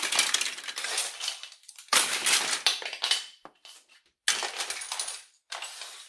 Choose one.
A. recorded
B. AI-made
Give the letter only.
A